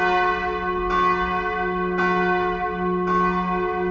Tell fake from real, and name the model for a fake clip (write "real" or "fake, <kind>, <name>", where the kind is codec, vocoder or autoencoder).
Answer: real